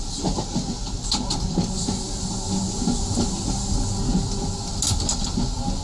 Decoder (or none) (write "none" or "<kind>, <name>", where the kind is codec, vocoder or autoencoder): none